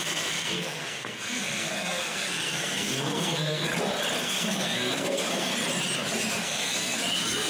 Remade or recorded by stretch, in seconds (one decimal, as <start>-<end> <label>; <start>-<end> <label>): 0.0-3.7 remade; 3.7-4.2 recorded; 4.2-5.5 remade; 5.5-6.3 recorded; 6.3-7.5 remade